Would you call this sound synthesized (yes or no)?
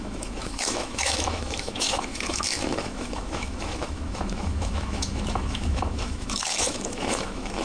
yes